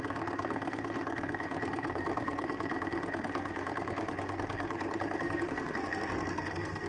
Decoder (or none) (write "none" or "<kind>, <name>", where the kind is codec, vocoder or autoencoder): codec, SNAC